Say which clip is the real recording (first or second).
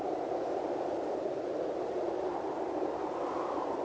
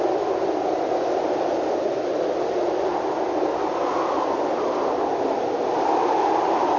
second